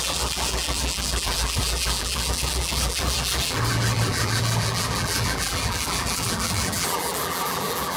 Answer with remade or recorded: remade